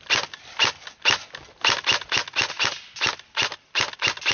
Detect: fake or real real